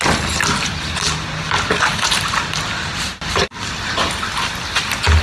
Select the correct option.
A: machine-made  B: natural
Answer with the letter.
B